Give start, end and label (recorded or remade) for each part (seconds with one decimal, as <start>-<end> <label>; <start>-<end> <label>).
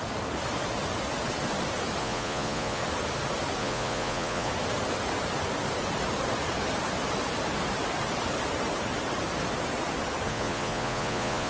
0.0-2.0 recorded; 2.0-2.8 remade; 2.8-3.6 recorded; 3.6-4.5 remade; 4.5-10.3 recorded; 10.3-11.5 remade